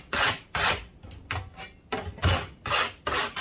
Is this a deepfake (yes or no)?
no